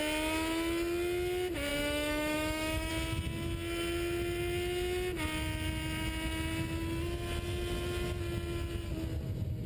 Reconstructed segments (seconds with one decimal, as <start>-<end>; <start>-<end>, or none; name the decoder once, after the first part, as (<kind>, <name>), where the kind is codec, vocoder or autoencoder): 1.7-2.9 (autoencoder, DAC-VAE)